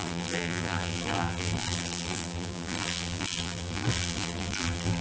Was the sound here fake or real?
fake